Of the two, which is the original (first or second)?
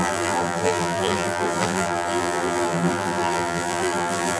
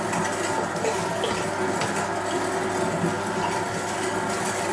second